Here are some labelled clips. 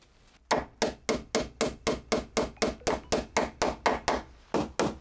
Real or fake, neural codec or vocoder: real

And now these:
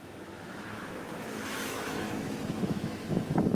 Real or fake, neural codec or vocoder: fake, autoencoder, DAC-VAE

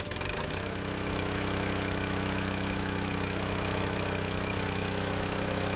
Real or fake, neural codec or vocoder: fake, autoencoder, DAC-VAE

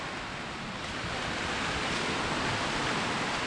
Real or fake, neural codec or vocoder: real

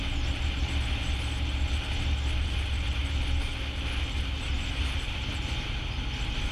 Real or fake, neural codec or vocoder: real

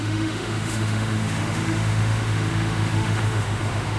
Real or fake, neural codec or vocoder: fake, autoencoder, DAC-VAE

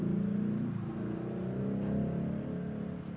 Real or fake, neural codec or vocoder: real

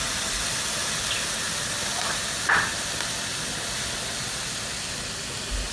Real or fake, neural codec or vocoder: real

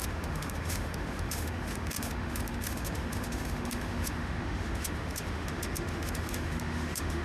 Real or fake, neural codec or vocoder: fake, autoencoder, DAC-VAE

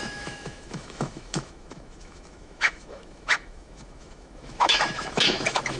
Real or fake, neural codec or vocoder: fake, autoencoder, DAC-VAE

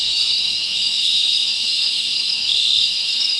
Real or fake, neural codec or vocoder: fake, autoencoder, DAC-VAE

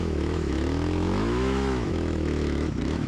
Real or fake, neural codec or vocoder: fake, autoencoder, DAC-VAE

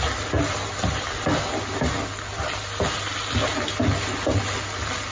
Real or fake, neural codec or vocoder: real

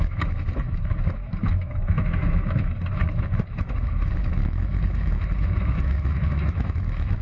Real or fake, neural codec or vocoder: fake, autoencoder, DAC-VAE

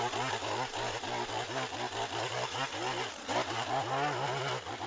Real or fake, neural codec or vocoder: real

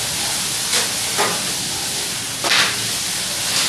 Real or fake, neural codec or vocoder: real